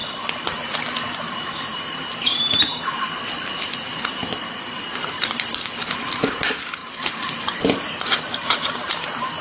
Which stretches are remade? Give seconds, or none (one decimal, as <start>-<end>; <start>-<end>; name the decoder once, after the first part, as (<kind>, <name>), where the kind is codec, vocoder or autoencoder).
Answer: 1.3-9.4 (vocoder, BigVGAN v2)